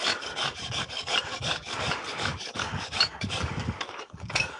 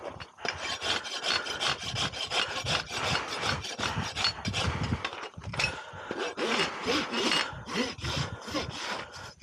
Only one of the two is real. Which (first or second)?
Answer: second